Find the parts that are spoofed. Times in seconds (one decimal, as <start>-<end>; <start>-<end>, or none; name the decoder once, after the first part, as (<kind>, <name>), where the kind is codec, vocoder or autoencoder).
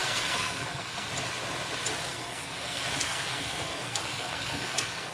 0.0-1.1 (codec, SNAC); 2.1-5.1